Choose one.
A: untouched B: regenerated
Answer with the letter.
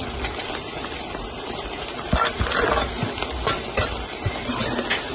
B